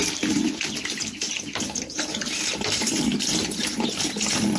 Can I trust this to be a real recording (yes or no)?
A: yes